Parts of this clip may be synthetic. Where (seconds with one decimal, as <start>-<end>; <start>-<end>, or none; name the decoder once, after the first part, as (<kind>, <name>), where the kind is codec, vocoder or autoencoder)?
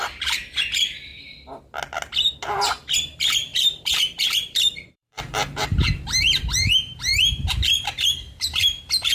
0.0-1.1 (vocoder, BigVGAN v2); 2.5-9.1